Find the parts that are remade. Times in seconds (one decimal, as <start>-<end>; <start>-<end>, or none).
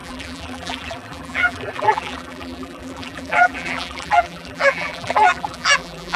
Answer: 0.0-6.2